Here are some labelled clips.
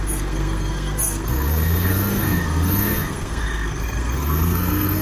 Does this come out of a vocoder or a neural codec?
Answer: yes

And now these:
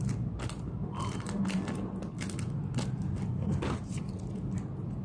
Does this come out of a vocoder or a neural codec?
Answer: no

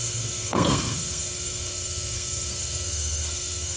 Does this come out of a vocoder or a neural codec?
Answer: yes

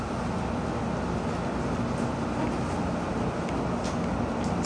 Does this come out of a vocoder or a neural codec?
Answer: no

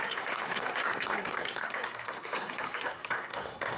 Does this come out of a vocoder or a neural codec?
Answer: yes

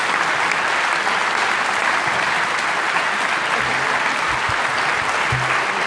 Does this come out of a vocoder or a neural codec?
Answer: no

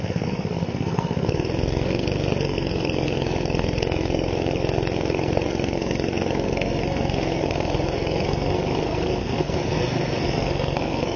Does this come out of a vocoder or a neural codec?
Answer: yes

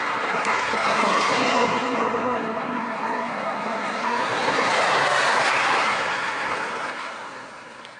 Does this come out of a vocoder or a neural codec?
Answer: yes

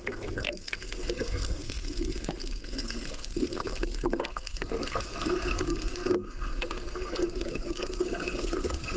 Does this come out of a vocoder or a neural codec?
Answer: yes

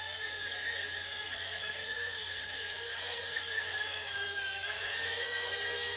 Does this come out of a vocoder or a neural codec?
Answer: yes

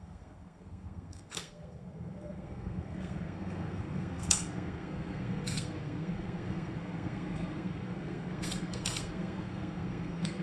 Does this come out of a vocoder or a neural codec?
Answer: yes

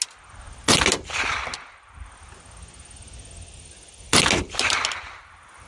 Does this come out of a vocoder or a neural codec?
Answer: no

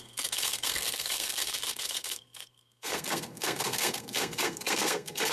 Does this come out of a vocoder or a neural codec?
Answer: yes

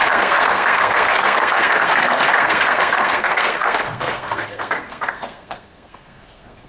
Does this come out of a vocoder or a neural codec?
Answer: yes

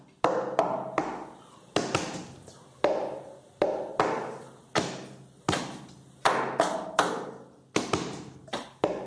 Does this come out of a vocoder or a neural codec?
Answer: no